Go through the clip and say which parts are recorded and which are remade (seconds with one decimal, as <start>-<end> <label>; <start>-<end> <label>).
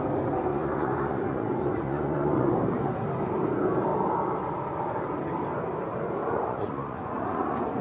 0.0-0.5 recorded; 0.5-2.5 remade; 2.5-6.2 recorded; 6.2-7.8 remade